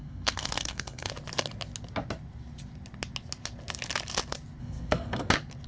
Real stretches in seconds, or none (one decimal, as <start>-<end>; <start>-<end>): 1.1-4.6; 5.3-5.7